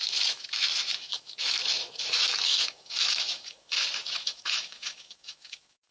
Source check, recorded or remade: remade